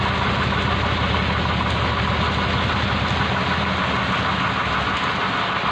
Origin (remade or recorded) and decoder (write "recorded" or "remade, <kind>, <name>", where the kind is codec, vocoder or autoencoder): recorded